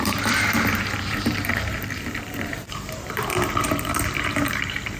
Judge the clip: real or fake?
fake